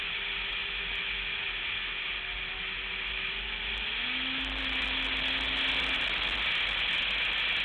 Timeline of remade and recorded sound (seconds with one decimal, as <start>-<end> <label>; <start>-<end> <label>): 0.0-7.6 recorded